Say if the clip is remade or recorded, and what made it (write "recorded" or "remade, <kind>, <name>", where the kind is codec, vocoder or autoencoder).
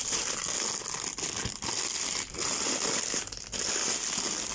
recorded